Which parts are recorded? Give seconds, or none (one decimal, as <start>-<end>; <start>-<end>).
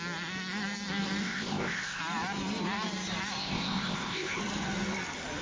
0.0-1.2; 2.0-3.4; 4.4-5.4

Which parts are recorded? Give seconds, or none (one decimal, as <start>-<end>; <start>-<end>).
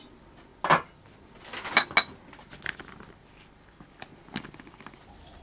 0.0-5.4